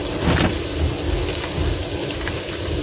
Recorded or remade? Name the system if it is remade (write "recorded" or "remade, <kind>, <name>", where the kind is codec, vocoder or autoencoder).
recorded